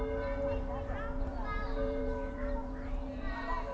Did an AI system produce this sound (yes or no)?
yes